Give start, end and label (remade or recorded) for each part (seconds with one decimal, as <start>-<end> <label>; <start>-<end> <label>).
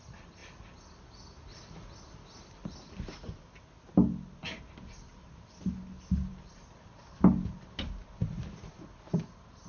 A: 0.0-9.7 recorded